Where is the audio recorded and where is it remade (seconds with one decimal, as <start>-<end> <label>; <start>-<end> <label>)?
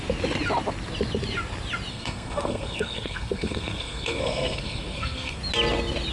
0.0-1.9 recorded; 1.9-5.4 remade; 5.4-6.1 recorded